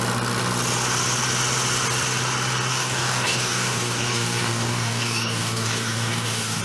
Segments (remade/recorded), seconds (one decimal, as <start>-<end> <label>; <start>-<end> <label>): 0.0-2.7 recorded; 2.7-6.6 remade